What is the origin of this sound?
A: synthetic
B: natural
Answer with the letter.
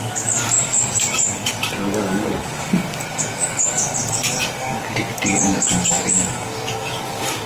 A